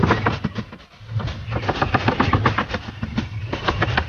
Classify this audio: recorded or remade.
recorded